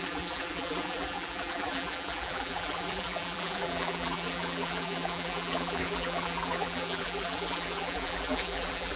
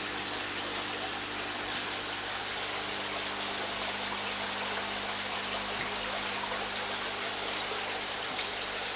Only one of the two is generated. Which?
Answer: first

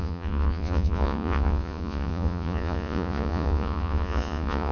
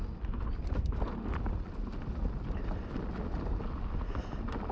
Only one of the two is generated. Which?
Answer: first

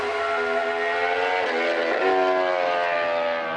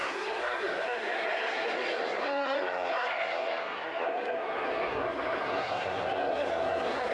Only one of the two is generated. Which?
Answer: second